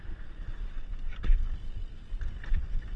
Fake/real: real